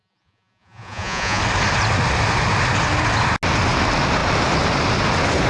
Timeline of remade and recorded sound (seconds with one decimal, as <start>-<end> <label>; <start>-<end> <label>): 0.0-1.4 remade; 1.4-5.5 recorded